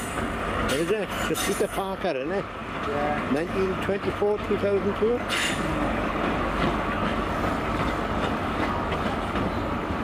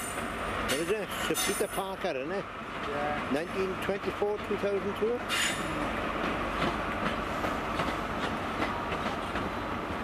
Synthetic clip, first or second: first